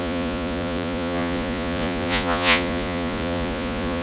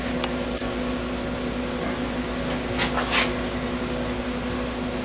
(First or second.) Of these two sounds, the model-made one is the first